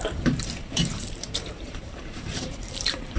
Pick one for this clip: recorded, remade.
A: remade